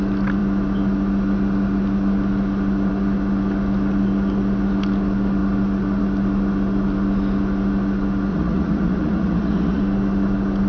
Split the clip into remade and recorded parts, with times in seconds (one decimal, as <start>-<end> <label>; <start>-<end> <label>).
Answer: 0.0-8.3 recorded; 8.3-9.8 remade; 9.8-10.7 recorded